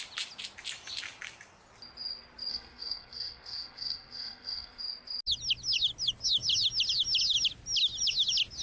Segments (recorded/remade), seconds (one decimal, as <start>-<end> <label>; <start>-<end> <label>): 0.0-2.5 recorded; 2.5-4.8 remade; 4.8-8.6 recorded